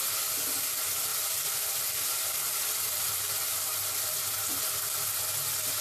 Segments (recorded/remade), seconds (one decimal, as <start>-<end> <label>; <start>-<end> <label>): 0.0-1.1 recorded; 1.1-4.6 remade; 4.6-5.8 recorded